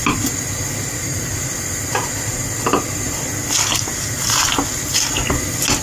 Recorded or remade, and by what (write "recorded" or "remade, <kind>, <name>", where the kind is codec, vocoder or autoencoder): recorded